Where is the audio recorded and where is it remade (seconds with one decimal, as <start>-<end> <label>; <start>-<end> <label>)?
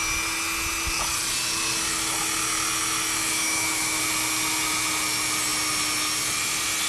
0.0-3.2 recorded; 3.2-4.0 remade; 4.0-6.9 recorded